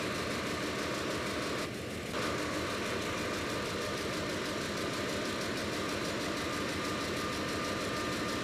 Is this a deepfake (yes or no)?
no